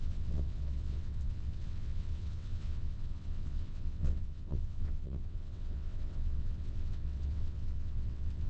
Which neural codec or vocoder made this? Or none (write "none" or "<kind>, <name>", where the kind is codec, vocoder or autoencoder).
vocoder, WaveNeXt